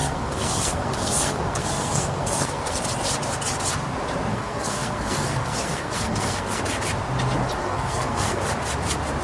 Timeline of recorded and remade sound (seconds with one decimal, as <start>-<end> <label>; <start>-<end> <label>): 0.0-2.8 remade; 2.8-4.3 recorded; 4.3-6.6 remade; 6.6-7.6 recorded; 7.6-8.4 remade; 8.4-9.2 recorded